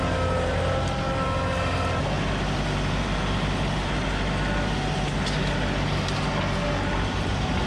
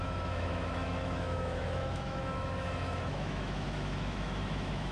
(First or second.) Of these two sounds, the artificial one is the second